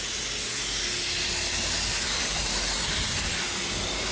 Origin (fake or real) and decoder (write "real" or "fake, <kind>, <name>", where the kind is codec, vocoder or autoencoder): real